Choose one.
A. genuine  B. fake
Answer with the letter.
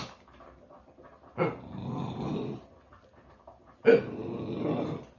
A